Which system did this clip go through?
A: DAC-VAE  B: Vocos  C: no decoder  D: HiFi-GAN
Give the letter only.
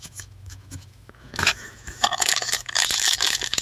A